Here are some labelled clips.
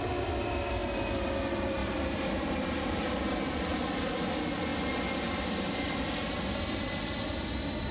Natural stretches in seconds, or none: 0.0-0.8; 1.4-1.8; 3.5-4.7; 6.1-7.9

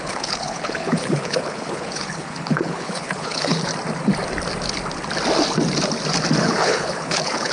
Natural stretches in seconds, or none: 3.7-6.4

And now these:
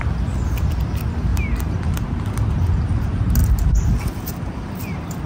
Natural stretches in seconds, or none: 0.0-1.3; 2.7-3.4; 4.3-5.3